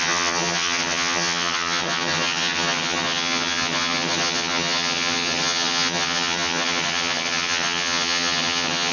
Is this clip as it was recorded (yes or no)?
no